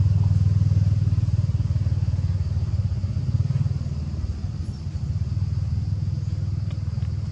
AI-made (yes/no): no